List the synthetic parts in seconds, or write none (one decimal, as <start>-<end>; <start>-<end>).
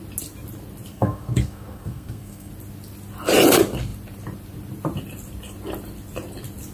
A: 0.9-2.5